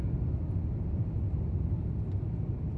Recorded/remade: recorded